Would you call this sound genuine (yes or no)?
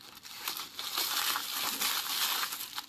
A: yes